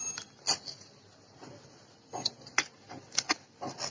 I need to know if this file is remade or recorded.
recorded